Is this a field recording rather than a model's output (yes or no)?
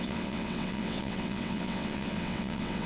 no